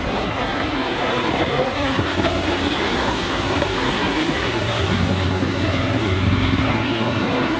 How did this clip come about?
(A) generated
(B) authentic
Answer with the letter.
A